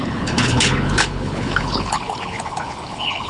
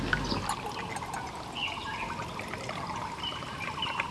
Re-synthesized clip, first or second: first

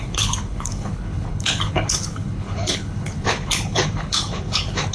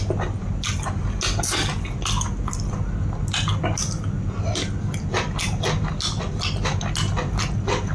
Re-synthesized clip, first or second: first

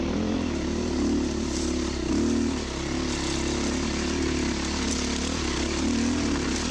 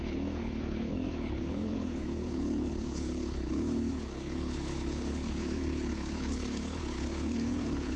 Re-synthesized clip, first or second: second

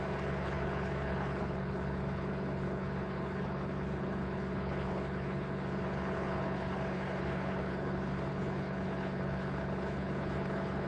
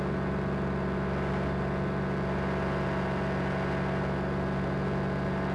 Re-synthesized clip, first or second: first